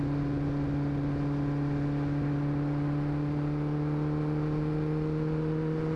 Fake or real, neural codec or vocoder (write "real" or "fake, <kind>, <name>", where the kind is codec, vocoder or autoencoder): real